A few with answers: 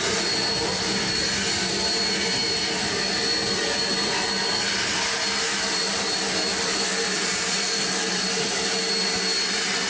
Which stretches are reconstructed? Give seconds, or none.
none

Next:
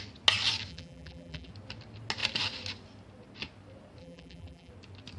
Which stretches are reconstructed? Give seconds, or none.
0.7-1.5 (vocoder, BigVGAN v2); 4.0-4.7

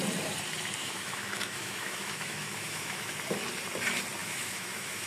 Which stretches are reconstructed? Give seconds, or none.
0.8-3.1 (autoencoder, DAC-VAE); 4.2-5.1